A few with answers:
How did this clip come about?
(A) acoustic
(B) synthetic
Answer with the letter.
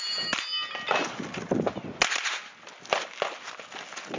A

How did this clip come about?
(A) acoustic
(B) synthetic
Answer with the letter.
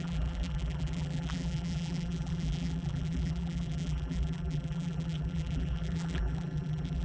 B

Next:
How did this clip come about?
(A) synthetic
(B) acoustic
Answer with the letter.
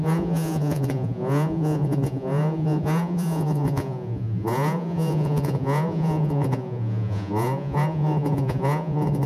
A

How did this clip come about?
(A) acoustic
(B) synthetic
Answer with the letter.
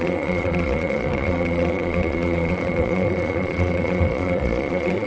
B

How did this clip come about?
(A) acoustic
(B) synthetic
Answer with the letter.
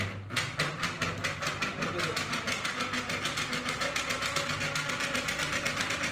A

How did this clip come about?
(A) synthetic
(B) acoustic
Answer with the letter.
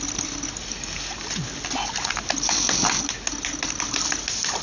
B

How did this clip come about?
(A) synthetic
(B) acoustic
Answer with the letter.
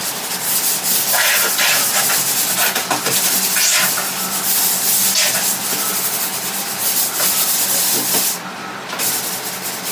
B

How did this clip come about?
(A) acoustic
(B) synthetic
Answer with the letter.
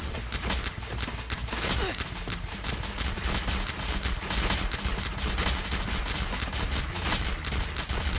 A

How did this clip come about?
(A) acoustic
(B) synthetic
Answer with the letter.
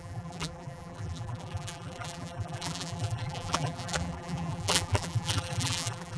B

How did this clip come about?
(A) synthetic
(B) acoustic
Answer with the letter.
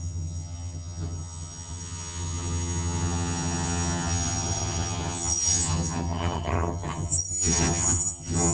A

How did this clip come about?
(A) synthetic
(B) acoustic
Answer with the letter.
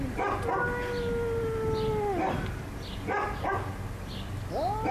B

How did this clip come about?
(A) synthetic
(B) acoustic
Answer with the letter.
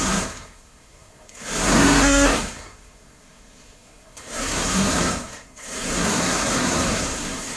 A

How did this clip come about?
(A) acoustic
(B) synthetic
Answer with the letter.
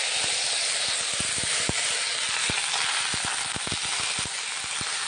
A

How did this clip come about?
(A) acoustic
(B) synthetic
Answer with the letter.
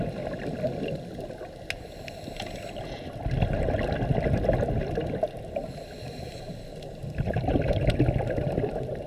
A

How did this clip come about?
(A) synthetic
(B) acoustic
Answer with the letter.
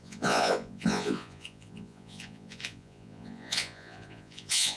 A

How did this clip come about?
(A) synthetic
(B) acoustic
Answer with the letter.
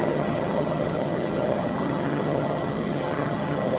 A